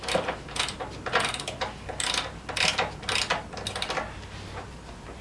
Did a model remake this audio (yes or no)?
no